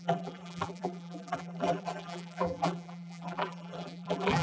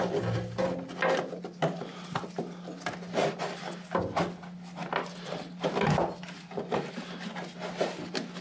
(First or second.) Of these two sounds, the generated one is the first